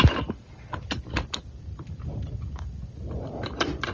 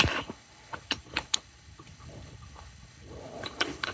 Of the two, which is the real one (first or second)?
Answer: first